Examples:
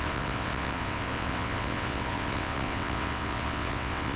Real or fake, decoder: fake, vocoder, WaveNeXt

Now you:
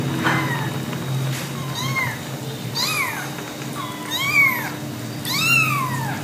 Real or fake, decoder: real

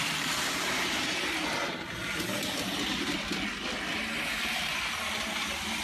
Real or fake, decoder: real